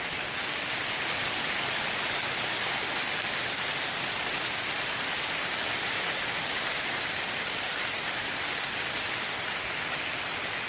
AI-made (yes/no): no